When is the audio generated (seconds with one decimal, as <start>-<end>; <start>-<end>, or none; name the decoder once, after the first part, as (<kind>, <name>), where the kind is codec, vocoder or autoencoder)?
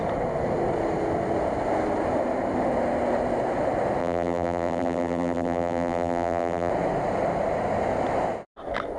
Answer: 4.0-6.7 (vocoder, BigVGAN v2)